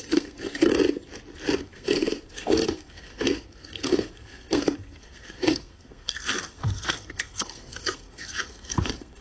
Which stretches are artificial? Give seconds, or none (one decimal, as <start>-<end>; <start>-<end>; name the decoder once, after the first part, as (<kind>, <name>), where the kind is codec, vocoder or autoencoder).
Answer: 0.0-0.7 (codec, SNAC); 1.6-9.2